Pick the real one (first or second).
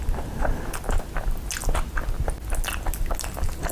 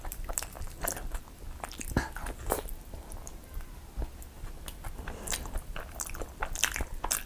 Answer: first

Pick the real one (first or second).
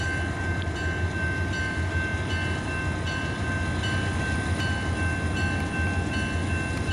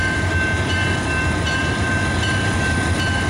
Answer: first